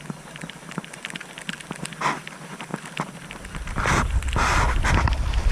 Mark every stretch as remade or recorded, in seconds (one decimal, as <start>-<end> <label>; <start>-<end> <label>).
0.0-5.5 recorded